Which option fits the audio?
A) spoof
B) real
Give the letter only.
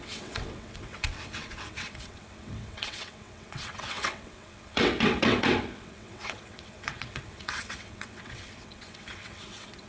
A